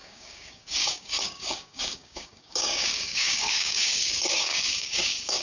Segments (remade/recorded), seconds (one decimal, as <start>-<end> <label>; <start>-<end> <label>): 0.0-5.4 remade